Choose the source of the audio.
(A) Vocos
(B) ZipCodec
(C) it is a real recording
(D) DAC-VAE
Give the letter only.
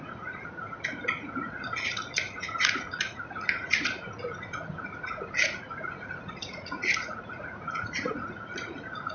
A